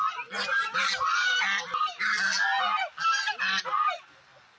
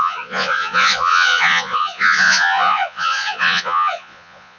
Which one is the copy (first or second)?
second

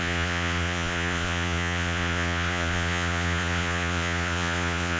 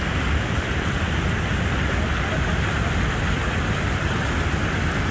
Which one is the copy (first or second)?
first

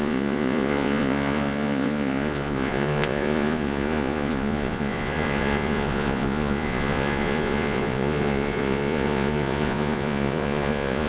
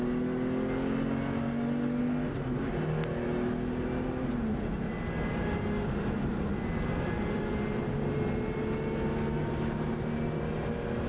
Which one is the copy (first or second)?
first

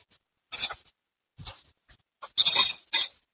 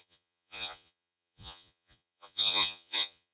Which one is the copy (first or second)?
second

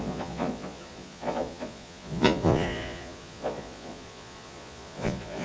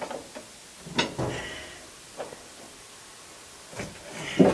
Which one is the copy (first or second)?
first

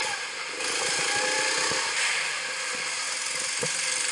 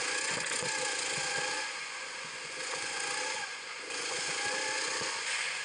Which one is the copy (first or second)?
second